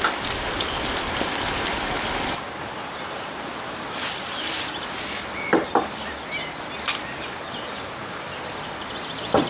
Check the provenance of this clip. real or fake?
real